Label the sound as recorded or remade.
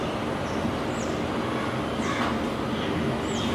recorded